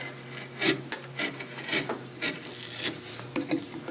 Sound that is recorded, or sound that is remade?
recorded